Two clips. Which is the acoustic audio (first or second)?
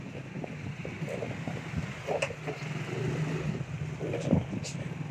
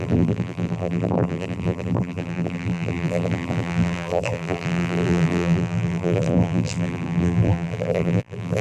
first